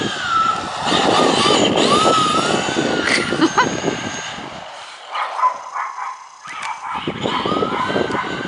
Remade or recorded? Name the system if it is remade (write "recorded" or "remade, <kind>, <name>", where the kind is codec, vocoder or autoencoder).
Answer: recorded